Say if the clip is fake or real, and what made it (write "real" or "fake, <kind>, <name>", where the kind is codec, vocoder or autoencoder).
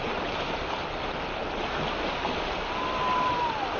real